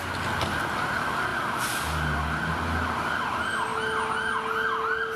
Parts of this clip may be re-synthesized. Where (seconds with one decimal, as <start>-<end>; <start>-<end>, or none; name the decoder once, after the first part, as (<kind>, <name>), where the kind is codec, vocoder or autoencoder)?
1.3-1.8 (vocoder, BigVGAN v2)